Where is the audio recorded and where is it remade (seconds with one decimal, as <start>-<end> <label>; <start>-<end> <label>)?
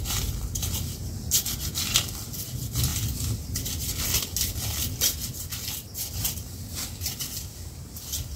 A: 0.0-8.4 recorded